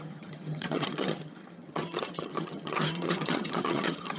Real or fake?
fake